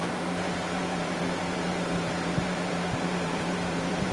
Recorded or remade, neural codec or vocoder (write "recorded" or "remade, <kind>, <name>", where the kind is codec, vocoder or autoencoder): remade, vocoder, BigVGAN v2